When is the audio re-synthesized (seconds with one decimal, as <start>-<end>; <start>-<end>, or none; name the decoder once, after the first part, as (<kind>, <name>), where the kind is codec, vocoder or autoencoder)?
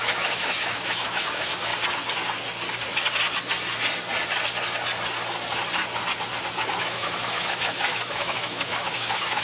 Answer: 0.0-1.7 (autoencoder, DAC-VAE); 6.8-9.4